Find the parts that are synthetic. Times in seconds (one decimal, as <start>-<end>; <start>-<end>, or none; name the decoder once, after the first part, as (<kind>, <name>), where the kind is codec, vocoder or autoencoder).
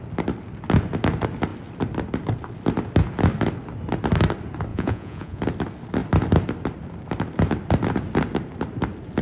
4.7-5.4 (vocoder, Vocos)